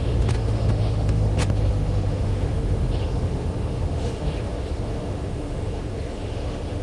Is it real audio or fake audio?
fake